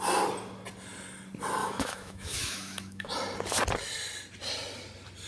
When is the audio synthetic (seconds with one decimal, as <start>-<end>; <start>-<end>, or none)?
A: 1.6-3.1